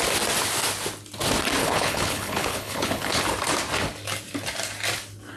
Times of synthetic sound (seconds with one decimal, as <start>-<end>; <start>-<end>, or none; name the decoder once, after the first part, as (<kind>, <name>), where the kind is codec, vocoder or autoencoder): 1.6-3.2 (codec, HILCodec)